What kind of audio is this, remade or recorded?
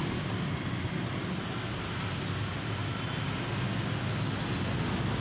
recorded